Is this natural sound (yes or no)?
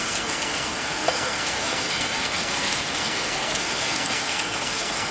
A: no